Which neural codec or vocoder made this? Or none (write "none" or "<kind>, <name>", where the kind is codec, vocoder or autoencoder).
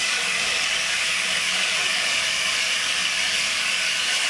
codec, DAC